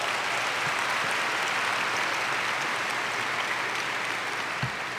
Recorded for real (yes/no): yes